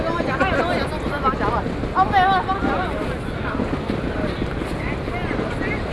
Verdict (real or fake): real